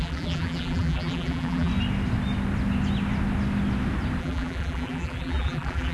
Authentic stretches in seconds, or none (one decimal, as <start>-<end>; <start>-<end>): 1.7-4.2